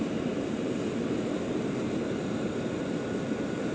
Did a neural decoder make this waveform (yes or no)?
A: no